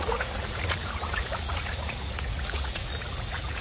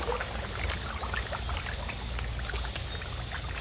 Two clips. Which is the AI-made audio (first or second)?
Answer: first